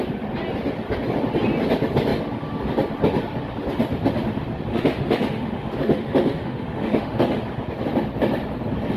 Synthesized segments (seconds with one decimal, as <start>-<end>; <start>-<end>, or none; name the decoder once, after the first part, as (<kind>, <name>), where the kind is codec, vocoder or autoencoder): 4.7-7.4 (autoencoder, DAC-VAE)